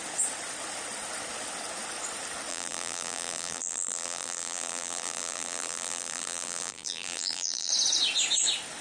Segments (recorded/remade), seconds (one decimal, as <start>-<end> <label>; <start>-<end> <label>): 0.0-2.5 recorded; 2.5-7.7 remade; 7.7-8.8 recorded